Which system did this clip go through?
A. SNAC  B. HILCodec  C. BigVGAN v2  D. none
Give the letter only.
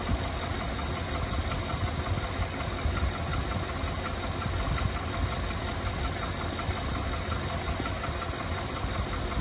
D